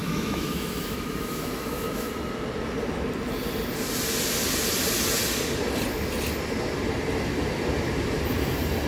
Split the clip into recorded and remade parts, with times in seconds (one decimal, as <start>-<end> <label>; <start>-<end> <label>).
0.0-2.1 remade; 2.1-8.9 recorded